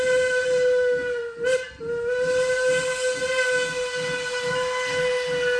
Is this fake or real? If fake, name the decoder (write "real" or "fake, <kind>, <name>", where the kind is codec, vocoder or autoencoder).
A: real